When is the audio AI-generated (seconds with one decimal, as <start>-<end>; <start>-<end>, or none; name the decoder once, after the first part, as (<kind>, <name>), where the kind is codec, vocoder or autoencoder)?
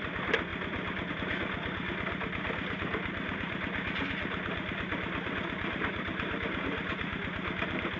0.0-8.0 (vocoder, BigVGAN v2)